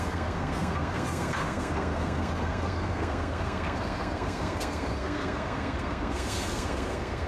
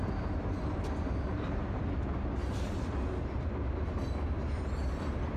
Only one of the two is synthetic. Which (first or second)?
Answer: first